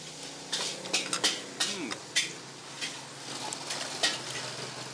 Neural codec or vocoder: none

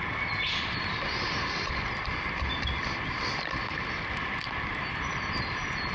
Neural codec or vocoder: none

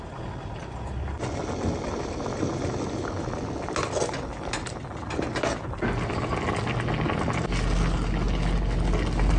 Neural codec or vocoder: none